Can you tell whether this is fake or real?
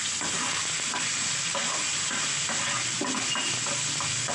real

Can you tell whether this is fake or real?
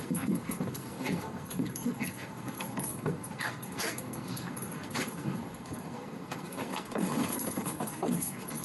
fake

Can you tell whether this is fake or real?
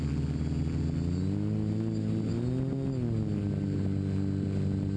real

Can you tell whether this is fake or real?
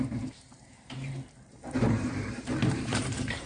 fake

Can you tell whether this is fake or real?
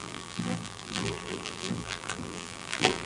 fake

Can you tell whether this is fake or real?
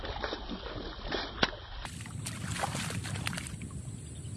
real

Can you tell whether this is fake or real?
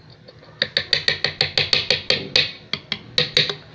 real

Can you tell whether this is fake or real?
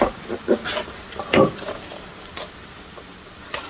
real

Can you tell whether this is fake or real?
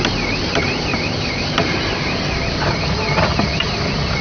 real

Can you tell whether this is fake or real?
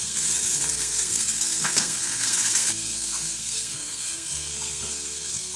fake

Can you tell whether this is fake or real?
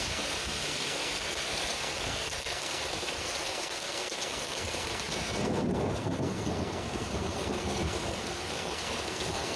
fake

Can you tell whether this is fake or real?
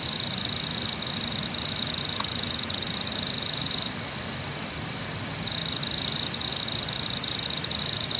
real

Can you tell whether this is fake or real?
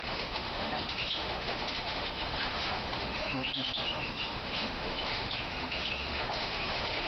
fake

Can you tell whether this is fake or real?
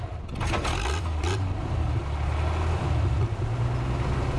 real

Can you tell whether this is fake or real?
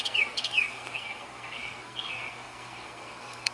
fake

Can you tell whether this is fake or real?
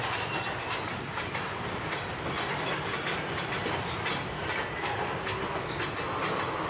real